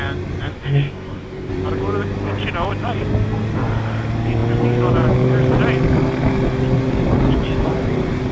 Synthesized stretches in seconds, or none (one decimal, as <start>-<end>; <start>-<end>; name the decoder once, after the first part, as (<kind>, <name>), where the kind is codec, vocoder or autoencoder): 0.5-1.5 (codec, SNAC)